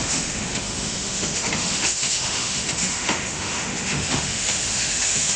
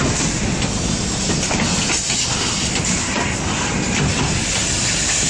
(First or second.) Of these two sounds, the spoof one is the first